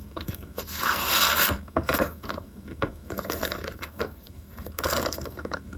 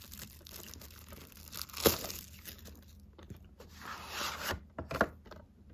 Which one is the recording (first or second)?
second